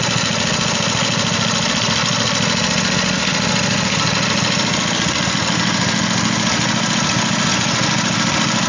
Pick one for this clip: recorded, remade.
recorded